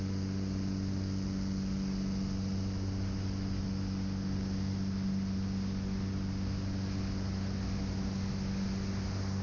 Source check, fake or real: real